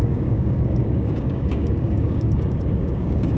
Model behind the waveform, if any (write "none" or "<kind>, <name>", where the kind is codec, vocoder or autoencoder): codec, DAC